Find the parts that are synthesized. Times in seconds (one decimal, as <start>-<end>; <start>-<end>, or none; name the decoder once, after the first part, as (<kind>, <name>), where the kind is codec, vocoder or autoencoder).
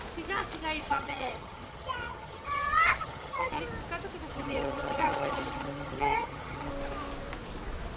0.8-3.6 (vocoder, HiFi-GAN); 4.3-6.7